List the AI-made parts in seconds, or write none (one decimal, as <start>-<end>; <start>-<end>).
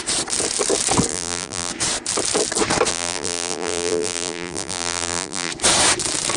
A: 1.1-1.7; 2.9-5.5